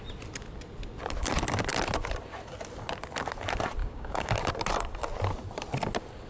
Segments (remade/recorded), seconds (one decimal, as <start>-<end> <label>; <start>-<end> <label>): 0.0-3.8 recorded; 3.8-4.3 remade; 4.3-6.3 recorded